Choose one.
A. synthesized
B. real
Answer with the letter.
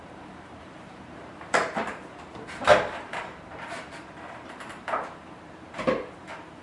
A